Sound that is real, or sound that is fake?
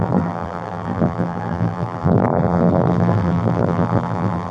fake